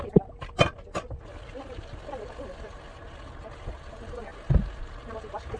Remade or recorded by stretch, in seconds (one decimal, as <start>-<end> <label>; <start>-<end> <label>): 0.0-5.6 recorded